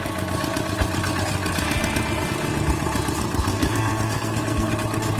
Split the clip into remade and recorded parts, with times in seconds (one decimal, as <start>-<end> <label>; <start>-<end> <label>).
0.0-3.5 recorded; 3.5-4.7 remade; 4.7-5.2 recorded